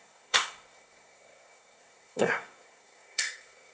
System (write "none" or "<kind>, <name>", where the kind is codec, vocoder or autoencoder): codec, SNAC